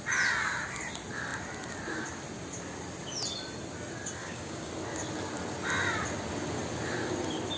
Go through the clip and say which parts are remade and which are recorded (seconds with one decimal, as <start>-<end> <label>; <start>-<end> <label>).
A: 0.0-4.2 recorded; 4.2-4.7 remade; 4.7-7.6 recorded